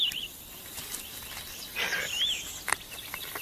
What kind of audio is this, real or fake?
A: real